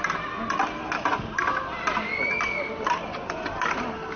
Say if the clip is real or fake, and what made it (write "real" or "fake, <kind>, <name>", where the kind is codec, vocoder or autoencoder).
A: real